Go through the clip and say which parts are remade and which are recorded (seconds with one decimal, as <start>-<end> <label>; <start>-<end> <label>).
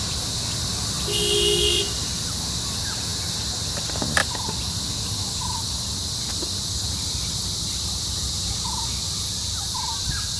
0.0-10.4 recorded